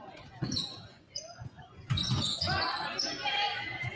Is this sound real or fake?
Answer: fake